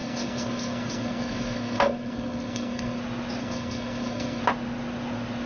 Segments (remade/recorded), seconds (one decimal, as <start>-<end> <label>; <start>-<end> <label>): 0.0-3.0 remade; 3.0-3.4 recorded; 3.4-4.4 remade; 4.4-5.5 recorded